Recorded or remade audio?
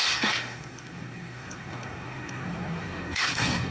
remade